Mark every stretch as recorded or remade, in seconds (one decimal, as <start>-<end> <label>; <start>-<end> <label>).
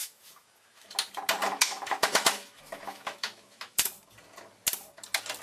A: 0.0-0.9 remade; 0.9-1.4 recorded; 1.4-3.9 remade; 3.9-5.4 recorded